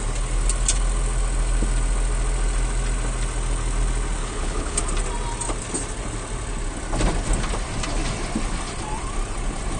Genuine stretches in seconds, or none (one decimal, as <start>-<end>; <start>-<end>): 0.0-4.2; 4.8-9.8